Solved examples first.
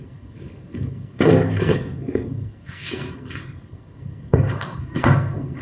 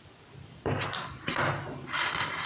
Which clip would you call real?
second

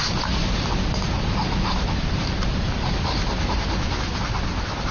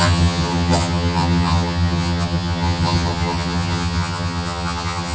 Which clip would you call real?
first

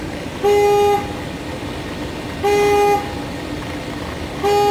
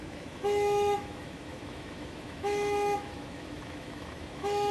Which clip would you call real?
first